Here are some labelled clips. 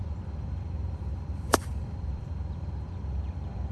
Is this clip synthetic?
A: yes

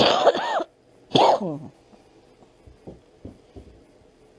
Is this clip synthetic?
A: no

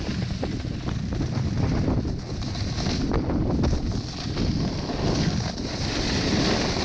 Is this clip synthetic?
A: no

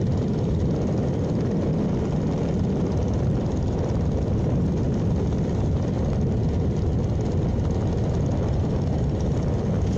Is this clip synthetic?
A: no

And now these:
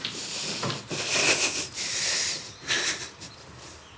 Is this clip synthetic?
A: no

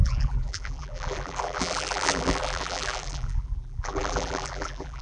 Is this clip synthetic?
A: yes